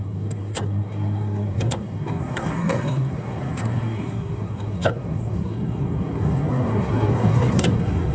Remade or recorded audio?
remade